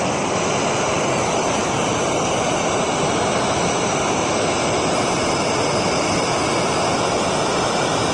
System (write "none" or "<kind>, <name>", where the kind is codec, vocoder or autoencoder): none